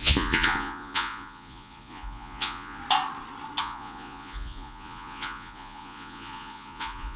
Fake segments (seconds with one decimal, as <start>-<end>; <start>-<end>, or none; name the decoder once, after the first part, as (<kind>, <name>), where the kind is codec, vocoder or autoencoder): 0.0-2.8 (vocoder, Vocos); 3.6-7.2